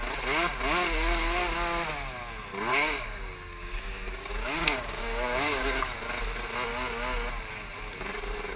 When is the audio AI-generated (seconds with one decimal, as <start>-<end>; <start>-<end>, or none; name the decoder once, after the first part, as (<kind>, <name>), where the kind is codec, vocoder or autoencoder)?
2.7-6.0 (codec, DAC)